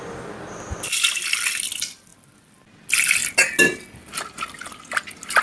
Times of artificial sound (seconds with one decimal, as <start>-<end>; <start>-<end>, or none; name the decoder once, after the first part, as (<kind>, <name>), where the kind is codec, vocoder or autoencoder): none